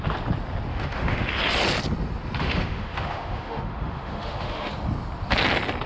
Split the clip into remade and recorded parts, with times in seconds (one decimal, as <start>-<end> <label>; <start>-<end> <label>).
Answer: 0.0-0.7 recorded; 0.7-1.3 remade; 1.3-2.4 recorded; 2.4-4.7 remade; 4.7-5.9 recorded